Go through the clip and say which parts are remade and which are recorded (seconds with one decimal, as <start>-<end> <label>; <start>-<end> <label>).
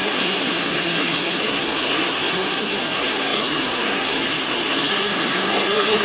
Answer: 0.0-6.0 remade